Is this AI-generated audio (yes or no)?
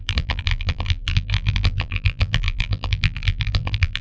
yes